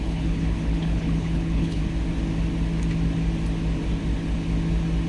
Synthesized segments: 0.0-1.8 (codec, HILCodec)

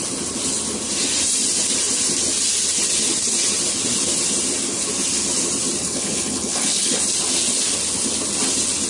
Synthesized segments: 5.8-7.0 (codec, HILCodec)

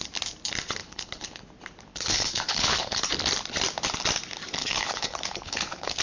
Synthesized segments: 0.8-1.4 (codec, HILCodec); 1.9-3.0; 4.6-6.0

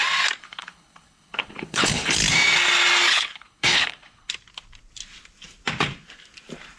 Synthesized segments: 0.4-2.1 (codec, HILCodec); 3.1-4.3